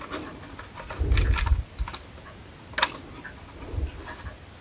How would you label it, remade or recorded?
recorded